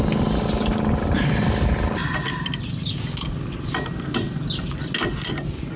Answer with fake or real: real